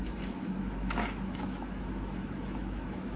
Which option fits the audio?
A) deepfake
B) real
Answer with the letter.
A